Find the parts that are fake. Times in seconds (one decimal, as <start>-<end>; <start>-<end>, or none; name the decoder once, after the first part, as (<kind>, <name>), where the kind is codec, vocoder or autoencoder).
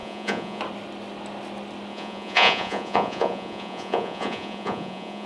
0.0-0.6 (vocoder, Vocos); 1.9-5.3